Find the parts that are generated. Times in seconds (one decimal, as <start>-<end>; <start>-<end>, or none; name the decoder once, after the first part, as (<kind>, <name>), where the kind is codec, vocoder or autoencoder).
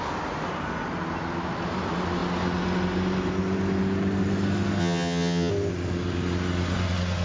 4.8-5.5 (vocoder, HiFi-GAN)